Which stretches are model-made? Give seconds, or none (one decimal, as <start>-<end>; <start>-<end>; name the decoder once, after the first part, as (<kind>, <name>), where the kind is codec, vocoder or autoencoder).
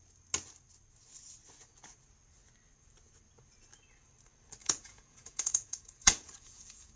4.6-7.0 (vocoder, Vocos)